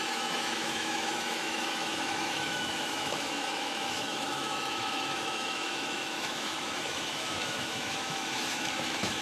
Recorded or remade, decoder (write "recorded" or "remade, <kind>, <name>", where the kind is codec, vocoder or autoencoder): remade, autoencoder, DAC-VAE